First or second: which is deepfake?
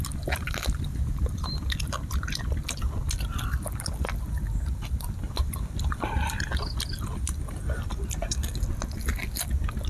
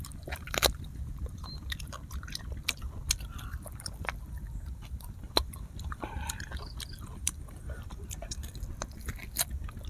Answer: second